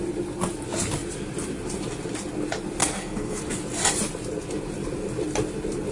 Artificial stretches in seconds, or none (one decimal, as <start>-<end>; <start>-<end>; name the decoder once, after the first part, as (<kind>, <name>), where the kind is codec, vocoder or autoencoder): 2.8-3.4 (codec, SNAC)